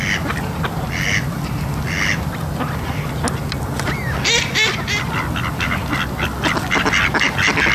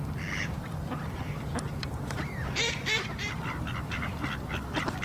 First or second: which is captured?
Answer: first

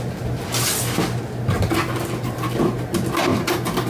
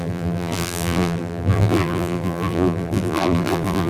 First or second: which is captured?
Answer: first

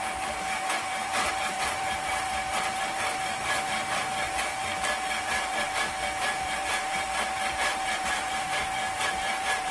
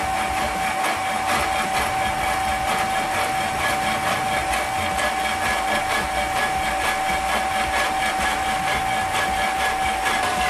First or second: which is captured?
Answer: second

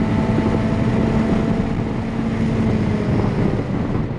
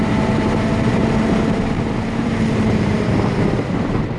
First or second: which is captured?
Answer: first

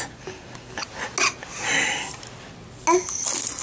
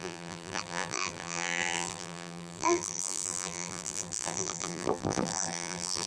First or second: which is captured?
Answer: first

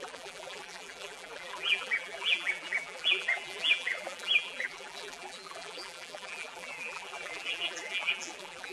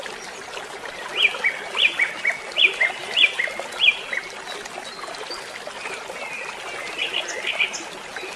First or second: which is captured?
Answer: second